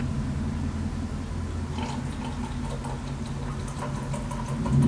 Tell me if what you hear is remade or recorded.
recorded